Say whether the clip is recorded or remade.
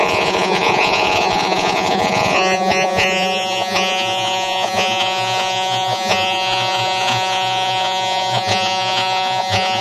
remade